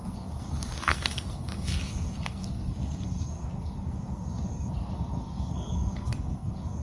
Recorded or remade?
remade